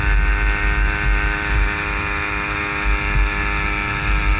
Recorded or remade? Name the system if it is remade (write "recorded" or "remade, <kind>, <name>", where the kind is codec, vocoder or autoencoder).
recorded